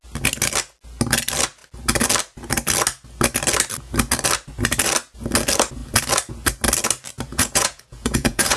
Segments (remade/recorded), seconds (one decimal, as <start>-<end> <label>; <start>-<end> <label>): 0.0-7.3 recorded; 7.3-8.6 remade